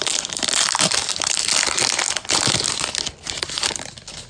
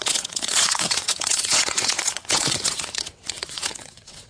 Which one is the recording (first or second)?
first